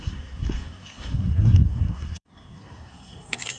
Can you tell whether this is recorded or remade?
remade